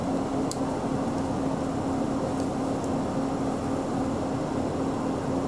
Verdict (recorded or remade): recorded